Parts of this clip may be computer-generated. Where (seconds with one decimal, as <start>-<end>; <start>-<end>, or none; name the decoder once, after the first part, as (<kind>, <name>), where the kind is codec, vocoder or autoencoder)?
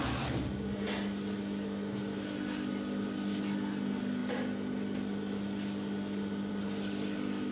none